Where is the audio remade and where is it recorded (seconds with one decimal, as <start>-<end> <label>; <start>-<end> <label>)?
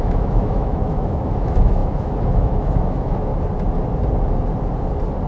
0.0-3.3 remade; 3.3-5.3 recorded